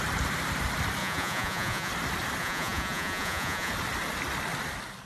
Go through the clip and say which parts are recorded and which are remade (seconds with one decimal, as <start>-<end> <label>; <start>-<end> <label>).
0.0-1.0 recorded; 1.0-1.9 remade; 1.9-2.4 recorded; 2.4-3.7 remade; 3.7-5.1 recorded